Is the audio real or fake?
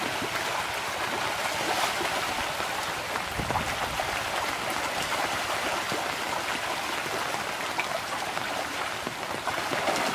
real